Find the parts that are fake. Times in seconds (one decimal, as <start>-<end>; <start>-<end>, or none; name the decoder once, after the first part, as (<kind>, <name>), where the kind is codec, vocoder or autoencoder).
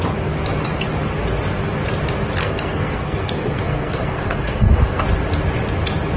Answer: 2.4-5.0 (codec, SNAC)